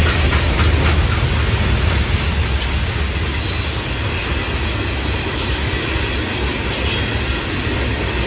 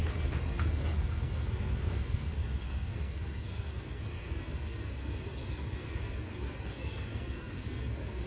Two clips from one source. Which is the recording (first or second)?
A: first